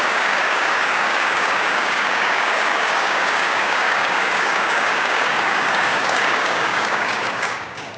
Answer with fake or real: fake